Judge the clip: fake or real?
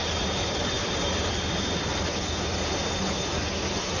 fake